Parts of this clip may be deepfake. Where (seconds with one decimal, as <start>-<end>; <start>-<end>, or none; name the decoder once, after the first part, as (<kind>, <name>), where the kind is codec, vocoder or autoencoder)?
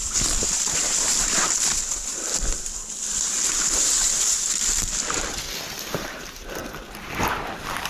0.0-6.6 (vocoder, BigVGAN v2); 7.4-7.9